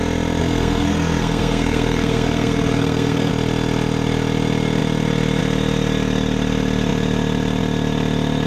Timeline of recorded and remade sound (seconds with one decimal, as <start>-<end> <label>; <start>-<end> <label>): 0.0-0.4 recorded; 0.4-3.3 remade; 3.3-8.5 recorded